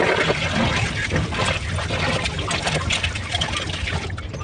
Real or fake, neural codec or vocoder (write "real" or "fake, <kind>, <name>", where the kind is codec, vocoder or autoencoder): real